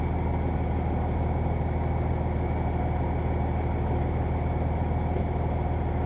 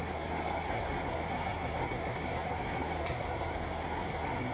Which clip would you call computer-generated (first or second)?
second